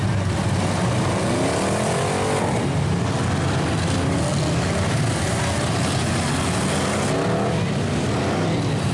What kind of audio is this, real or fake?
real